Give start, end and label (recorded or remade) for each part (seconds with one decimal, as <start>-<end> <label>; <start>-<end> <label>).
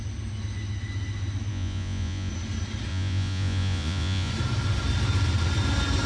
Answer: 0.0-1.5 recorded; 1.5-2.3 remade; 2.3-2.9 recorded; 2.9-4.3 remade; 4.3-6.1 recorded